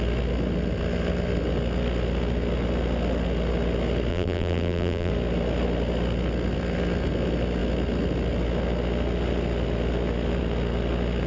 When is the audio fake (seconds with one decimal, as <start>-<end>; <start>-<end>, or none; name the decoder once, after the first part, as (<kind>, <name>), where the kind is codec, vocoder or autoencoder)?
4.1-5.1 (vocoder, BigVGAN v2)